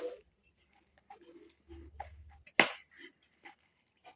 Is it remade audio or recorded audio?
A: recorded